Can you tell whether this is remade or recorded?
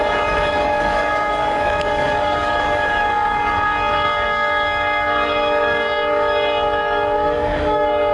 remade